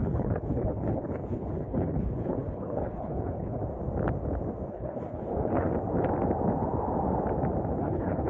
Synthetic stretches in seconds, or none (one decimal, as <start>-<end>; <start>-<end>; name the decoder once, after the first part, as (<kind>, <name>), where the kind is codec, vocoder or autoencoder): 0.0-3.6 (codec, HILCodec); 4.7-5.7; 7.8-8.3